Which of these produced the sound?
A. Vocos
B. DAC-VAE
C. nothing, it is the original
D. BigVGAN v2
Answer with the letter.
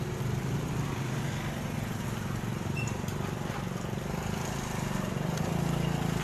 C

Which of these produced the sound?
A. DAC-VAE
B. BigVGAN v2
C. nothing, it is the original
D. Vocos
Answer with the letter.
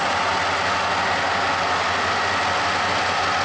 C